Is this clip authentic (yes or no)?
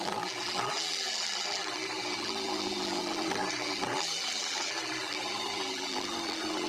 no